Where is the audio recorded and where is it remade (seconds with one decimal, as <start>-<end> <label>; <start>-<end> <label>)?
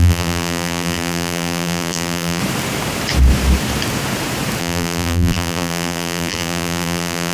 0.0-2.4 remade; 2.4-4.6 recorded; 4.6-7.3 remade